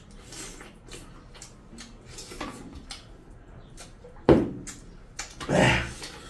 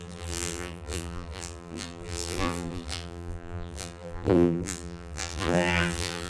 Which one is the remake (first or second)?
second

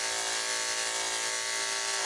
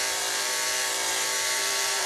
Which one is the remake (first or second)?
second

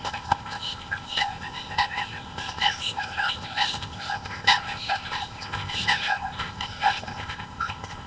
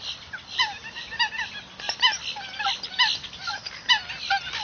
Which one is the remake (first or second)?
first